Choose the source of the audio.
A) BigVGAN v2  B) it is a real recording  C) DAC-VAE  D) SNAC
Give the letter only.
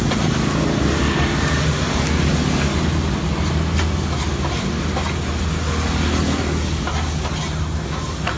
B